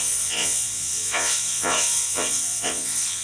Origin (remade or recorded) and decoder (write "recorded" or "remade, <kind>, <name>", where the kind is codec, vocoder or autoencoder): remade, vocoder, Vocos